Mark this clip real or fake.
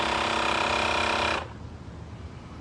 real